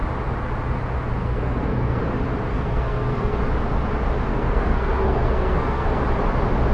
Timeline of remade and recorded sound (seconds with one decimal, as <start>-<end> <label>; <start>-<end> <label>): 0.0-1.2 recorded; 1.2-2.0 remade; 2.0-2.5 recorded; 2.5-3.4 remade; 3.4-4.3 recorded; 4.3-6.0 remade; 6.0-6.7 recorded